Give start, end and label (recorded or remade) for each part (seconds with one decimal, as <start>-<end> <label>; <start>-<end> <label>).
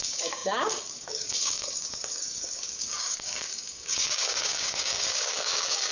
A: 0.0-5.9 remade